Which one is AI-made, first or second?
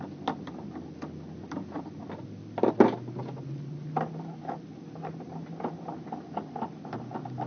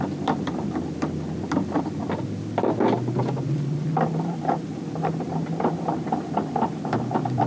second